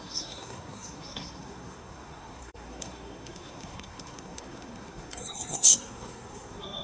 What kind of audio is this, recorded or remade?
remade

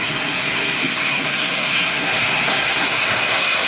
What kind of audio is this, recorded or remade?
remade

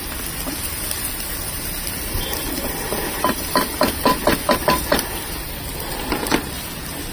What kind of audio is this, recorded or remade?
recorded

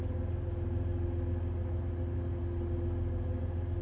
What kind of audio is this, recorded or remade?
recorded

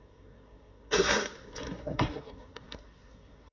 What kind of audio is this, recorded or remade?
remade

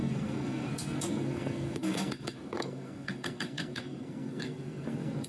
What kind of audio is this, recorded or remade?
remade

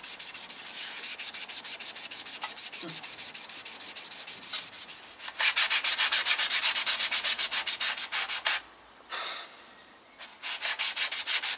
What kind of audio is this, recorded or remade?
recorded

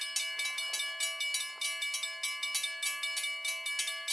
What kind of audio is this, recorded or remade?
recorded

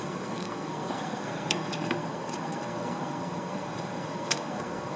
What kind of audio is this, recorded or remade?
remade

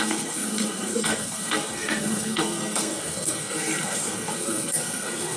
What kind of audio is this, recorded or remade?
remade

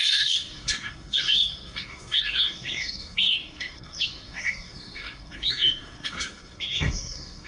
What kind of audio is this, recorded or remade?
remade